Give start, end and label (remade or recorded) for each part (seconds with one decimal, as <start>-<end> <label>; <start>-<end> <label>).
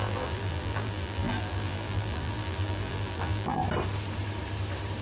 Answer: 0.0-3.6 remade; 3.6-5.0 recorded